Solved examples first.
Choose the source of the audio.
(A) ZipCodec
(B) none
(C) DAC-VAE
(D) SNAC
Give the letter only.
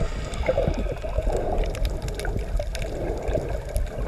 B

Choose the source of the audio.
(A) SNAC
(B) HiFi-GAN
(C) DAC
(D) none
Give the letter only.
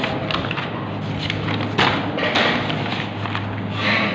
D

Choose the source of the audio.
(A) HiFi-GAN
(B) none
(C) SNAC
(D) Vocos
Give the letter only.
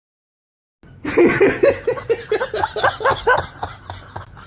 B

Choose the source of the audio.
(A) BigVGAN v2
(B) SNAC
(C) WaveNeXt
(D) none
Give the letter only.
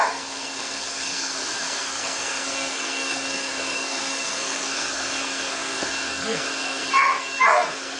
B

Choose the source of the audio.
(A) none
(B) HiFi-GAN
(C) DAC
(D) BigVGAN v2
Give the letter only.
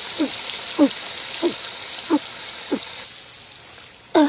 A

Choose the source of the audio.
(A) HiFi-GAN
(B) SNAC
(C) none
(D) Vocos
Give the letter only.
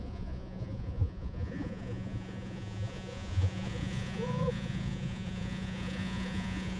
D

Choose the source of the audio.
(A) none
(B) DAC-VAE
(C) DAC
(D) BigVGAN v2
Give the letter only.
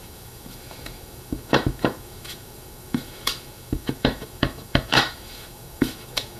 B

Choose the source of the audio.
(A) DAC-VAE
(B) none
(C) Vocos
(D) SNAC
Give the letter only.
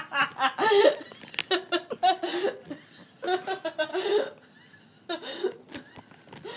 B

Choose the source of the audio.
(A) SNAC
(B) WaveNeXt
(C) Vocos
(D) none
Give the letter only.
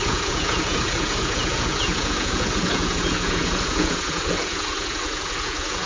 C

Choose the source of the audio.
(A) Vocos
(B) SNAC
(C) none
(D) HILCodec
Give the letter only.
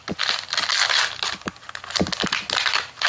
C